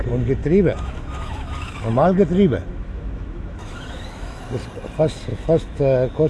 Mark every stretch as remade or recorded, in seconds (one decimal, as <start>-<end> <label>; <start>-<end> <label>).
0.0-0.4 recorded; 0.4-1.9 remade; 1.9-2.7 recorded; 2.7-4.4 remade; 4.4-5.3 recorded; 5.3-6.3 remade